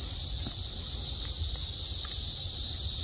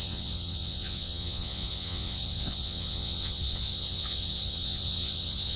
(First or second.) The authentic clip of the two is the first